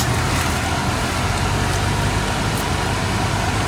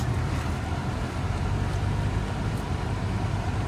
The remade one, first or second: second